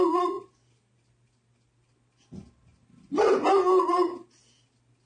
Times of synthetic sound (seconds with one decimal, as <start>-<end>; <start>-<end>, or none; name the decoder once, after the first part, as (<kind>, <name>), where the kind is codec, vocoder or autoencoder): none